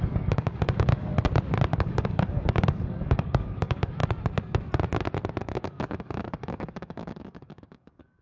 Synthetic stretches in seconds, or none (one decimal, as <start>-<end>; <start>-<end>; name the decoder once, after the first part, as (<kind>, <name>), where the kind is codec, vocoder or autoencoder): 0.0-1.1 (codec, DAC); 1.7-4.0; 5.4-8.2